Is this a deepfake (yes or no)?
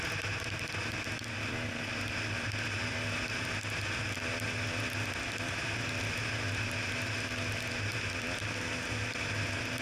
no